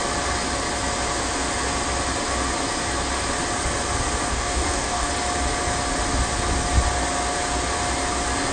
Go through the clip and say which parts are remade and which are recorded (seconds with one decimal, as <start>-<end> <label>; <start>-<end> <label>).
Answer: 0.0-4.3 recorded; 4.3-5.1 remade; 5.1-8.5 recorded